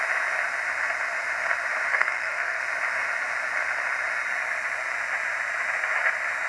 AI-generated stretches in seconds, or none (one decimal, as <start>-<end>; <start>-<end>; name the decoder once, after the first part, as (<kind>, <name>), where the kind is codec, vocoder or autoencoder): 1.9-2.6 (codec, SNAC)